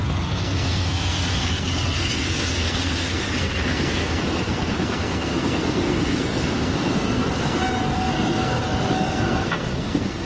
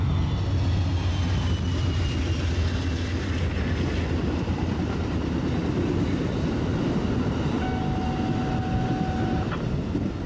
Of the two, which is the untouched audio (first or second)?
second